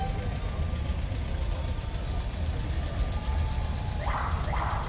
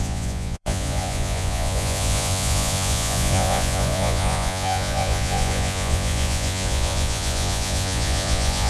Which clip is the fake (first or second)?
second